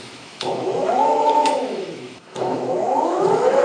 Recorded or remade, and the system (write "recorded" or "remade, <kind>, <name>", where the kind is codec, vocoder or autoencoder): remade, autoencoder, DAC-VAE